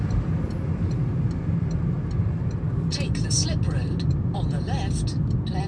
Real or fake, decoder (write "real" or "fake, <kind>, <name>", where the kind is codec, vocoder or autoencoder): real